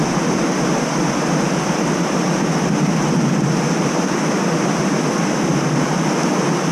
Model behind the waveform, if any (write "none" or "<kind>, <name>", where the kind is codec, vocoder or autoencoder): none